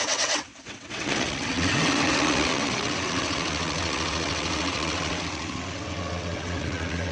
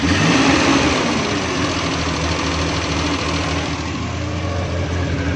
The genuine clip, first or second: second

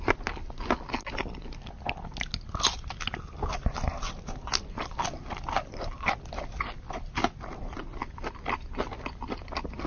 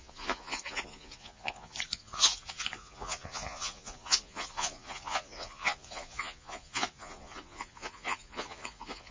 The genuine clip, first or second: first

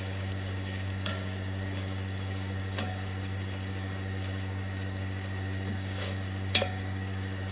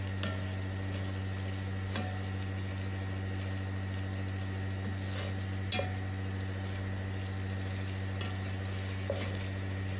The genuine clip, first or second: second